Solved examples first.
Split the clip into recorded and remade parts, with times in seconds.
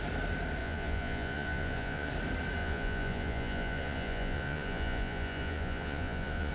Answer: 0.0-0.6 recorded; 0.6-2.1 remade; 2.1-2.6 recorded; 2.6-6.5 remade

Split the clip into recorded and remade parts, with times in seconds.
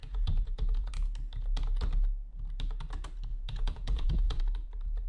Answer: 0.0-0.9 remade; 0.9-3.3 recorded; 3.3-4.4 remade; 4.4-5.1 recorded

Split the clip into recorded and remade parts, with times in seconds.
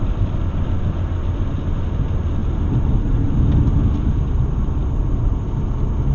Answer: 0.0-6.1 recorded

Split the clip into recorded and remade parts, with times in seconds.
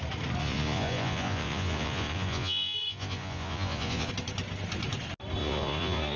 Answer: 0.0-0.4 recorded; 0.4-4.1 remade; 4.1-5.4 recorded; 5.4-6.2 remade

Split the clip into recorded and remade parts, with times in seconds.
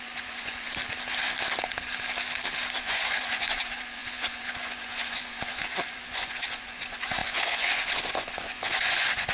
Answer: 0.0-0.8 remade; 0.8-2.8 recorded; 2.8-9.3 remade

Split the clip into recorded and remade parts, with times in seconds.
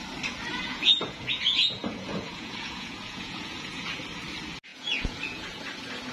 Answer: 0.0-0.5 recorded; 0.5-4.0 remade; 4.0-4.7 recorded; 4.7-5.6 remade; 5.6-6.1 recorded